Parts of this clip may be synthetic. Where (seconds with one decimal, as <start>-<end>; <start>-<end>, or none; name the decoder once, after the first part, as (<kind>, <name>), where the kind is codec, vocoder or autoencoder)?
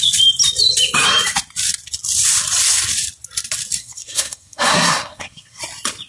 3.8-5.6 (codec, SNAC)